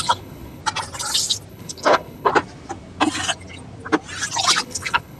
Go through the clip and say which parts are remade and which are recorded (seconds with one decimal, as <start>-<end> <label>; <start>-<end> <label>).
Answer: 0.0-0.6 remade; 0.6-1.5 recorded; 1.5-2.3 remade; 2.3-4.6 recorded; 4.6-5.2 remade

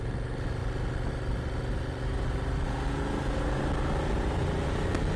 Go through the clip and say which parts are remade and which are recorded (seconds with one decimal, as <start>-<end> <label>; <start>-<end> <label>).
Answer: 0.0-5.2 recorded